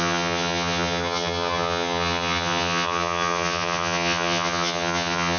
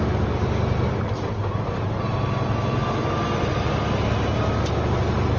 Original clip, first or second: second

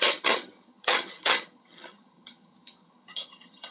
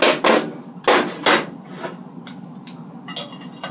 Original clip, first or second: second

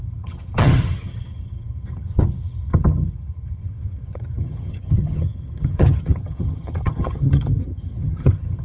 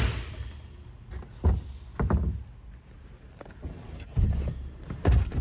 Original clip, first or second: second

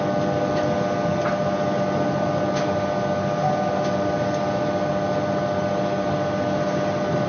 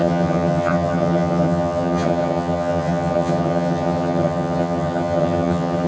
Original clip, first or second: first